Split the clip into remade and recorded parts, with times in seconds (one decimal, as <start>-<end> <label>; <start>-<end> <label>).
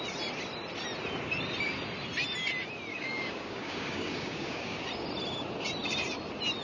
0.0-2.9 recorded; 2.9-4.8 remade; 4.8-6.6 recorded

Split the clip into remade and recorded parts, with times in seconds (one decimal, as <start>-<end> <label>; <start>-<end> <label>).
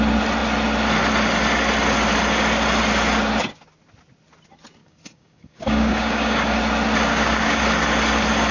0.0-4.8 recorded; 4.8-6.6 remade; 6.6-7.1 recorded; 7.1-7.6 remade; 7.6-8.5 recorded